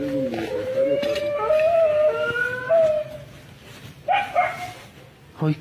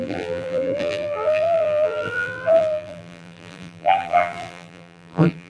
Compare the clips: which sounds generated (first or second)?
second